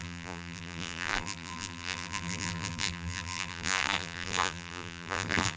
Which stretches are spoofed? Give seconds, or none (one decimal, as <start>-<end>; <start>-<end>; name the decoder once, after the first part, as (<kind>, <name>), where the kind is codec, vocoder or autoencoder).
0.0-5.6 (vocoder, BigVGAN v2)